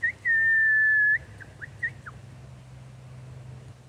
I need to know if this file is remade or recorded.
recorded